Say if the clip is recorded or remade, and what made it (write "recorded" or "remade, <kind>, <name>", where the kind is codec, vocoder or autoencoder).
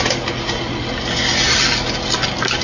recorded